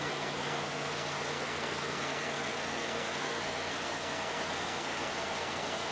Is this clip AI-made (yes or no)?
yes